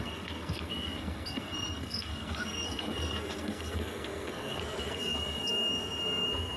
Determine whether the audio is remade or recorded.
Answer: remade